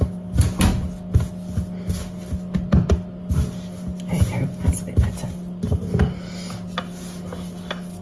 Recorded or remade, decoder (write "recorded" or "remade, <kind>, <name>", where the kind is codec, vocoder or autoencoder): recorded